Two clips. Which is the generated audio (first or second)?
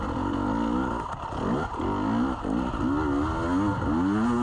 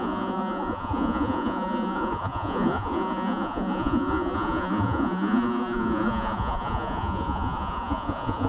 second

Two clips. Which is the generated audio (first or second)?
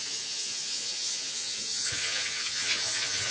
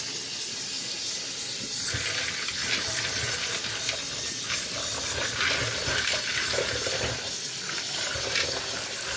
first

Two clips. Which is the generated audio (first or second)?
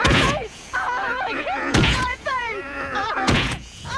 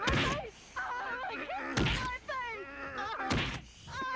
first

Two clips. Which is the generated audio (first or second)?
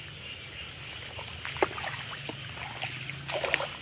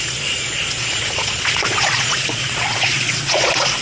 second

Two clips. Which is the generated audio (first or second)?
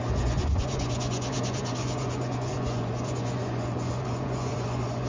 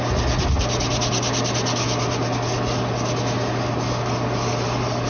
first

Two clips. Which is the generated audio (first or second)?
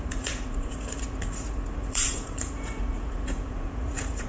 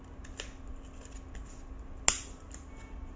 first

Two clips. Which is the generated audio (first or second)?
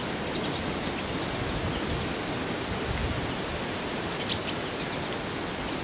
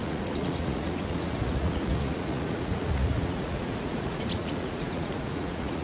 second